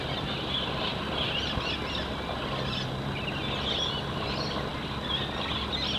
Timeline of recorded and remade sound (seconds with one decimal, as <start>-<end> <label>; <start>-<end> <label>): 0.0-6.0 recorded